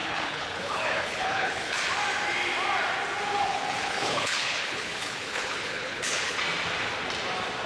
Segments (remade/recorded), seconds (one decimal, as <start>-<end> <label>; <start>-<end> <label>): 0.0-1.8 remade; 1.8-3.5 recorded; 3.5-6.4 remade; 6.4-7.7 recorded